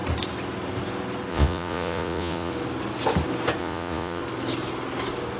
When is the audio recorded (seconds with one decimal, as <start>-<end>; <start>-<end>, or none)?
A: 0.0-1.3; 2.5-3.6; 4.2-5.4